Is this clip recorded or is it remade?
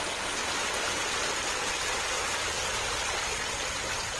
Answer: recorded